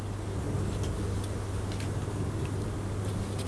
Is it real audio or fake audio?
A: real